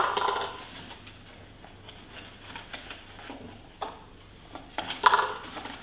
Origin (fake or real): real